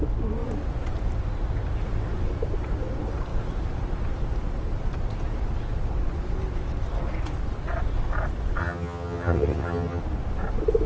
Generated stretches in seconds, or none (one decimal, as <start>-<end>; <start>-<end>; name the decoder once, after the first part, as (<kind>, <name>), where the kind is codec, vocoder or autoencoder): 8.6-10.0 (vocoder, HiFi-GAN)